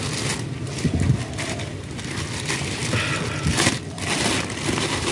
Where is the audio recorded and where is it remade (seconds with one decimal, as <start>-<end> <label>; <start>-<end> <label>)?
0.0-5.1 recorded